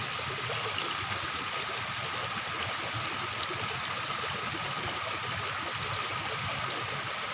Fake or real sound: real